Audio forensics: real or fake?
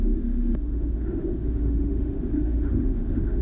fake